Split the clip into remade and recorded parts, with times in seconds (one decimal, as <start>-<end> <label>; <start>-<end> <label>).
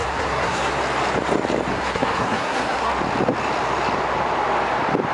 0.0-0.7 remade; 0.7-1.7 recorded; 1.7-2.9 remade; 2.9-5.1 recorded